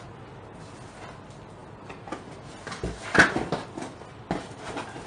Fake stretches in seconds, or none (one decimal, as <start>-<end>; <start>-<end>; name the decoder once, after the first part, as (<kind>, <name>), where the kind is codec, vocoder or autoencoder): none